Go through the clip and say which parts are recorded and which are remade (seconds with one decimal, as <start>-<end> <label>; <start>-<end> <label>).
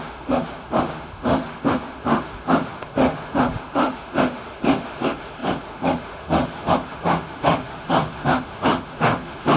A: 0.0-9.6 remade